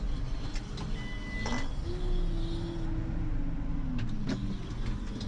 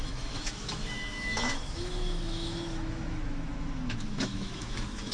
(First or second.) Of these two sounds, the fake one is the second